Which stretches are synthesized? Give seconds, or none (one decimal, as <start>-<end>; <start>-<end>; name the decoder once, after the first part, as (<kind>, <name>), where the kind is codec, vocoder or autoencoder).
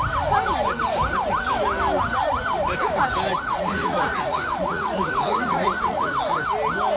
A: 3.3-6.2 (vocoder, Vocos)